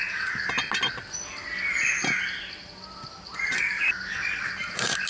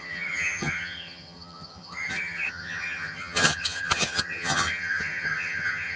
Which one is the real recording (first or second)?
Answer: first